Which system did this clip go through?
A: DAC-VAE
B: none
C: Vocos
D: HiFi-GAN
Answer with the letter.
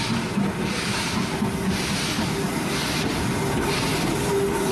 B